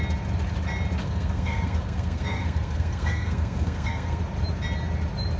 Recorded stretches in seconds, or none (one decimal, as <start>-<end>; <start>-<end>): 0.0-1.0; 4.2-5.4